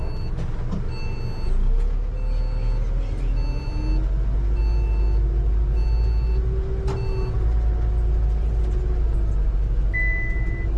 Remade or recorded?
recorded